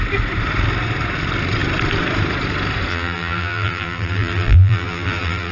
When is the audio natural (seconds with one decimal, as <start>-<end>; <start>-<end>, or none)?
0.0-2.9